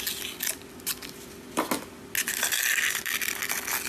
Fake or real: real